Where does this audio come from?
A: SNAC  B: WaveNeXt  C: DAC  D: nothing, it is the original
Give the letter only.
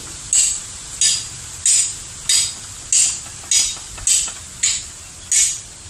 D